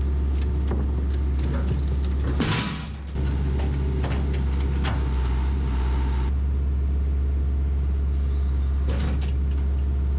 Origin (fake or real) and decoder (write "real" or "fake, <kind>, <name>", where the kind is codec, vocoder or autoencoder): real